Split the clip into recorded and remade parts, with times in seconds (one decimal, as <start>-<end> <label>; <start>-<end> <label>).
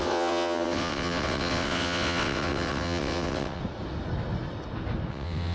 0.0-3.6 remade; 3.6-5.1 recorded; 5.1-5.5 remade